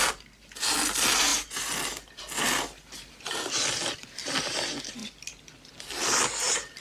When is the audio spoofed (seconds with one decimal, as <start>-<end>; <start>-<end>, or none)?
none

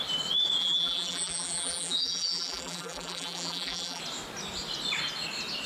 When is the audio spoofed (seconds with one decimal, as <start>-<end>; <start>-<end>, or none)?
0.6-4.0

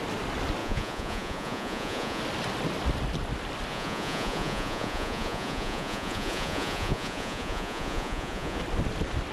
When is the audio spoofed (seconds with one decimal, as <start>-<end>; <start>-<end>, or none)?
0.6-2.2; 3.7-8.6

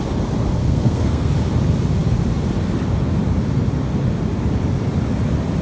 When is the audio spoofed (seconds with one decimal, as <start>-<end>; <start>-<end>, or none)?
0.6-1.3

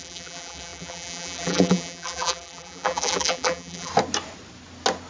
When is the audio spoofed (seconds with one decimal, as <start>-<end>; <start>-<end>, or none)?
0.0-3.9

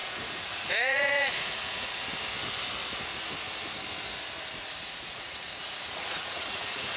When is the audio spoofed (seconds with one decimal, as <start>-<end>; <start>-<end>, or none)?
0.0-2.1; 4.6-7.0

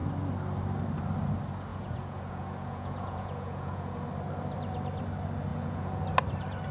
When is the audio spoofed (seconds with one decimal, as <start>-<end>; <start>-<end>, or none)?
1.7-4.0; 5.5-6.0